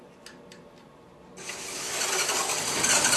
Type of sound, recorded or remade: recorded